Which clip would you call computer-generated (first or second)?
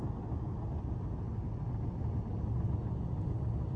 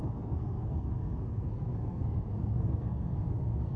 second